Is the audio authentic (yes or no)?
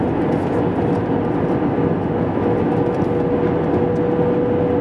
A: yes